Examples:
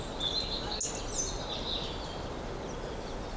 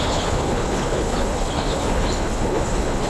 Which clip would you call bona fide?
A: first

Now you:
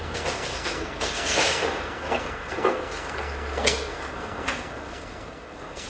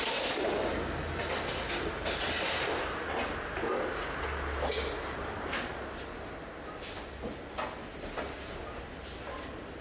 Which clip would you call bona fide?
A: second